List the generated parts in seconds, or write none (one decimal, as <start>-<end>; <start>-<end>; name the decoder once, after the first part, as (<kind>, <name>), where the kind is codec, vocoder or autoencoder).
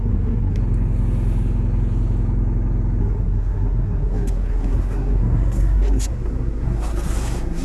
0.0-0.6 (codec, SNAC); 3.0-7.6